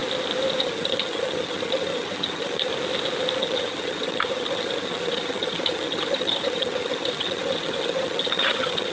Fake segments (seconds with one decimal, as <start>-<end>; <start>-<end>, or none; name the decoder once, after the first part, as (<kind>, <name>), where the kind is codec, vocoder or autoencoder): 0.6-2.7 (vocoder, HiFi-GAN); 3.4-8.9